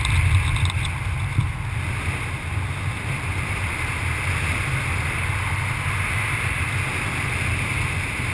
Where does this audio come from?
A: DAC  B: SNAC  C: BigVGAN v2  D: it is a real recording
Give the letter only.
D